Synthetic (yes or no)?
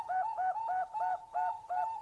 no